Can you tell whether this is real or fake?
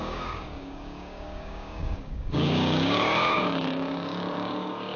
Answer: fake